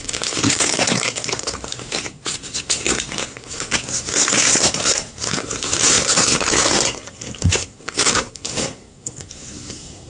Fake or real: fake